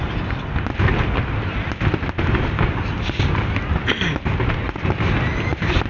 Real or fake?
real